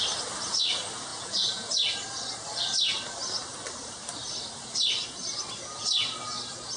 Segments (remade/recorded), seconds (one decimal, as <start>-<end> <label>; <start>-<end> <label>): 0.0-1.1 recorded; 1.1-1.7 remade; 1.7-6.8 recorded